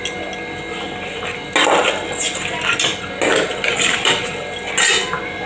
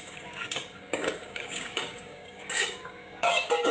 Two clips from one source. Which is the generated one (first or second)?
second